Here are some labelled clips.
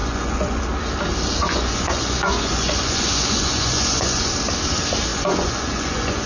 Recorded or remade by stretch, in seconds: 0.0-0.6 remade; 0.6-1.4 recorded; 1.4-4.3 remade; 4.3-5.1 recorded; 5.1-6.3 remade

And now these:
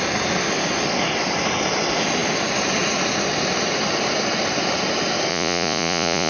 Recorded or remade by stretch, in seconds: 0.0-5.3 recorded; 5.3-6.3 remade

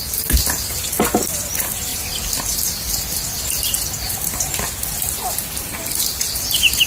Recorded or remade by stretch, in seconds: 0.0-6.9 recorded